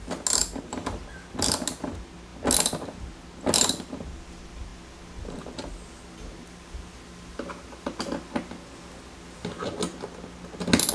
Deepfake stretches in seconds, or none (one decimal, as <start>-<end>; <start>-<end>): none